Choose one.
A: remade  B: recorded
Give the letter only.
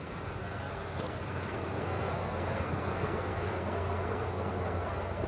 A